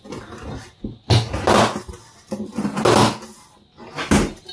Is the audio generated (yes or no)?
no